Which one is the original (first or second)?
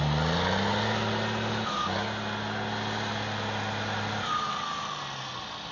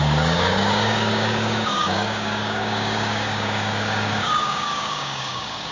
first